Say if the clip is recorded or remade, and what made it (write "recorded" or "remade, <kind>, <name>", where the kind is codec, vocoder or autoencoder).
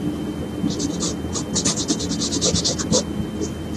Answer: recorded